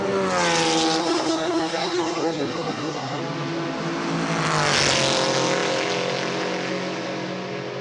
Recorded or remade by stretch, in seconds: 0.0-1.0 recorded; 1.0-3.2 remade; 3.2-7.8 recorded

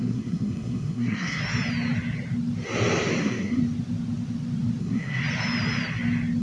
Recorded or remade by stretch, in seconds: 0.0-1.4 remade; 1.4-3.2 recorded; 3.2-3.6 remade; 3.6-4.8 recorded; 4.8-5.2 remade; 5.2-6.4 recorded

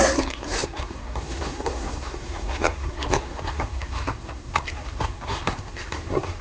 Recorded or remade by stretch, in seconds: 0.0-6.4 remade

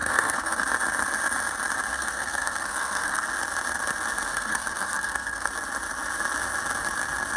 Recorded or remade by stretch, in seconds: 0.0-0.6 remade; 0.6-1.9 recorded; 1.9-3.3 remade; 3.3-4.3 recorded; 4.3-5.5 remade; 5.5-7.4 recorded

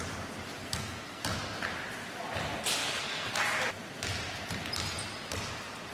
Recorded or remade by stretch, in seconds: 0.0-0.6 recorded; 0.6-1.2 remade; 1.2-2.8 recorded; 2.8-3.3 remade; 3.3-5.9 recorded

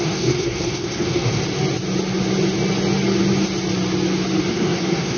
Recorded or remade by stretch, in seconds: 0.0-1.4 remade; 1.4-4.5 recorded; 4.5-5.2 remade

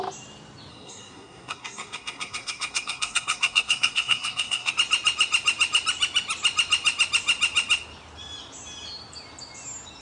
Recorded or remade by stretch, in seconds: 0.0-0.7 recorded; 0.7-4.7 remade; 4.7-10.0 recorded